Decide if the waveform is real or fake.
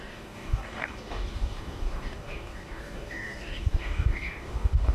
fake